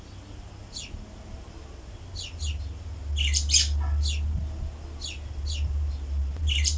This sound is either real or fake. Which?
real